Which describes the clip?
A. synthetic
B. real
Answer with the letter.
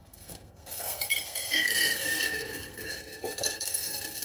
A